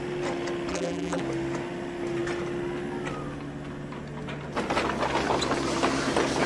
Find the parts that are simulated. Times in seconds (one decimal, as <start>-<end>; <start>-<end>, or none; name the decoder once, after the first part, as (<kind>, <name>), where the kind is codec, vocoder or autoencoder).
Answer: 0.7-1.2 (vocoder, BigVGAN v2)